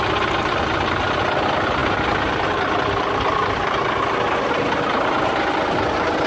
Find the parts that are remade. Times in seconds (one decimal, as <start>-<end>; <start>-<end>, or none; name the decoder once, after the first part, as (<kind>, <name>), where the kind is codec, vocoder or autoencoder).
none